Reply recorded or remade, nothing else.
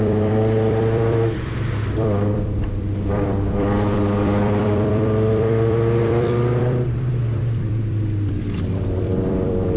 remade